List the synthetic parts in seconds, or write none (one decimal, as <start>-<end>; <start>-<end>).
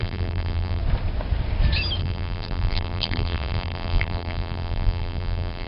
0.0-0.8; 2.0-5.7